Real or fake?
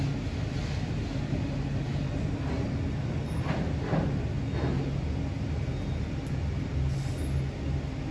real